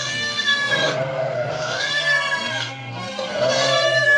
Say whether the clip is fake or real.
fake